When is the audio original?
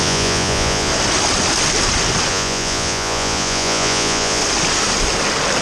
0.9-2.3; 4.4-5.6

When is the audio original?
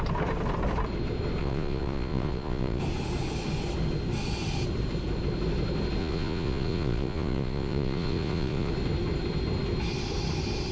0.0-1.4; 2.8-6.0; 8.7-10.7